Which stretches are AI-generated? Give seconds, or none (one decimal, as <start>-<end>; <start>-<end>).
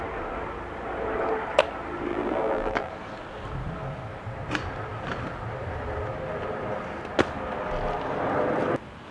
2.1-2.9